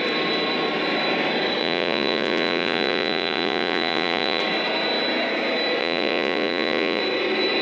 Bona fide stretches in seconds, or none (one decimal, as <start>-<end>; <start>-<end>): 0.0-1.6; 4.4-5.8; 7.0-7.6